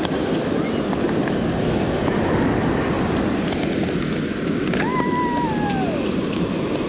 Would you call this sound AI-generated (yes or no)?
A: no